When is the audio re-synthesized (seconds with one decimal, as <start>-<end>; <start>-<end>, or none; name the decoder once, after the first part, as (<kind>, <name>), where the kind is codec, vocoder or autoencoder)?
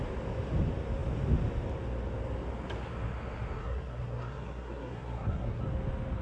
3.6-5.6 (codec, SNAC)